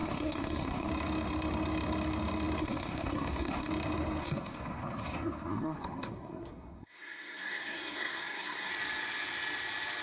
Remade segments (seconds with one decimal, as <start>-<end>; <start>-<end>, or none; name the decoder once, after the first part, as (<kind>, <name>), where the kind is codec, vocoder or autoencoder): 0.0-0.9 (codec, SNAC); 2.6-3.7; 4.2-8.7